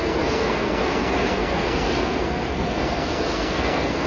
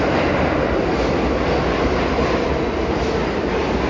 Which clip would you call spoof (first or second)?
first